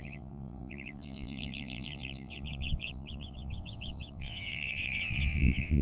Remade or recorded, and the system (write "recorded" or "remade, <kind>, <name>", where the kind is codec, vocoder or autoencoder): remade, vocoder, WaveNeXt